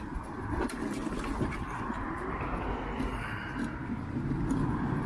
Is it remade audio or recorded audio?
recorded